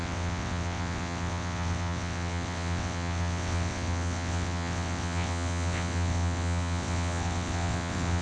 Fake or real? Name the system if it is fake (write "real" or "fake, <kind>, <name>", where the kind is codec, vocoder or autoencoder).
fake, vocoder, WaveNeXt